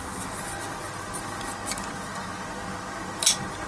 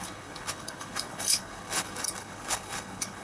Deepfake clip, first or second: second